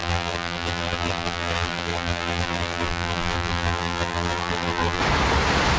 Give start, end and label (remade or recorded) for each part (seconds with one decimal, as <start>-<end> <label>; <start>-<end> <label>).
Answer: 0.0-5.0 remade; 5.0-5.8 recorded

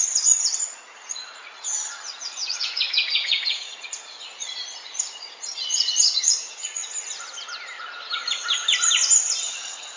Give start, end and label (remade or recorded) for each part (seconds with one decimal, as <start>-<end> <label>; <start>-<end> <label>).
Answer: 0.0-6.8 remade; 6.8-9.5 recorded; 9.5-10.0 remade

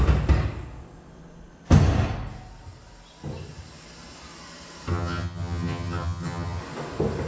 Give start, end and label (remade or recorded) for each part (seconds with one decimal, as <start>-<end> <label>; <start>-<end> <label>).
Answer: 0.0-4.9 recorded; 4.9-6.6 remade; 6.6-7.3 recorded

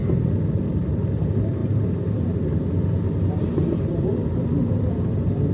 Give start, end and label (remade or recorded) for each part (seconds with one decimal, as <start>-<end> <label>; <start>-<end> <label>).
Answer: 0.0-5.5 recorded

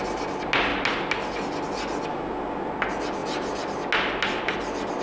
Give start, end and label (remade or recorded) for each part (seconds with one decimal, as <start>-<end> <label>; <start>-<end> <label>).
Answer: 0.0-2.1 recorded; 2.1-2.7 remade; 2.7-5.0 recorded

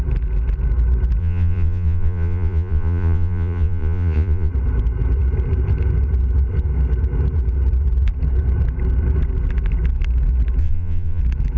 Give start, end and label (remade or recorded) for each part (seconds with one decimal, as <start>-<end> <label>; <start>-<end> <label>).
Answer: 0.0-1.2 recorded; 1.2-4.5 remade; 4.5-10.6 recorded; 10.6-11.2 remade; 11.2-11.6 recorded

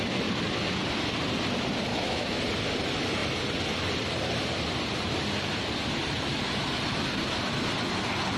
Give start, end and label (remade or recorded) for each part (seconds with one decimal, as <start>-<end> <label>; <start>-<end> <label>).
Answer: 0.0-1.9 recorded; 1.9-2.4 remade; 2.4-8.4 recorded